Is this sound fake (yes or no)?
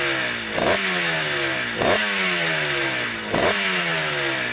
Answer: no